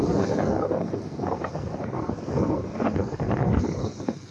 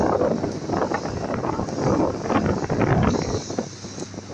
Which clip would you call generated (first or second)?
first